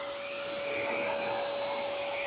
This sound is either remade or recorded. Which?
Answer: recorded